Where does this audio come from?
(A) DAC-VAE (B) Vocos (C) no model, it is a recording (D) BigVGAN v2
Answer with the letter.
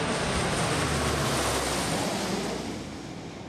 C